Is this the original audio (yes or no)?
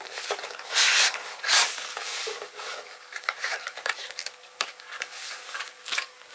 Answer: no